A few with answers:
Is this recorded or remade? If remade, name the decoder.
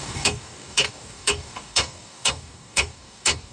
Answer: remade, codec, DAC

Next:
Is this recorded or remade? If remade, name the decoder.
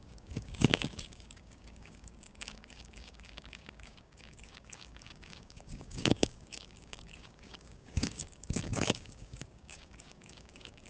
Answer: remade, codec, DAC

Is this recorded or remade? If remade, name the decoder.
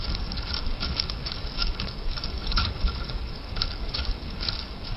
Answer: remade, codec, DAC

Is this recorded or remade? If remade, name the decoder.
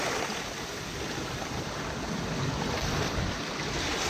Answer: recorded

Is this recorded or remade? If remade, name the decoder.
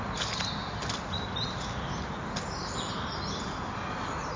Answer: recorded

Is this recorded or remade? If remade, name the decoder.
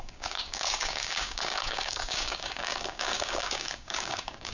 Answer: remade, codec, DAC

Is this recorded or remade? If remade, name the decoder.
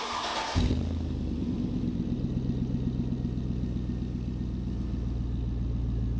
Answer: recorded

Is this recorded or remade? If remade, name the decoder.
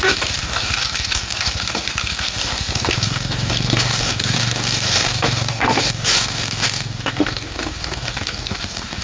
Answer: remade, codec, DAC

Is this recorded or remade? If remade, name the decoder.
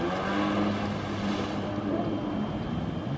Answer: recorded